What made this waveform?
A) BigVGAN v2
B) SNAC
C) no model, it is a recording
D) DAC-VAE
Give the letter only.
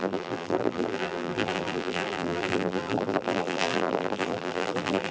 A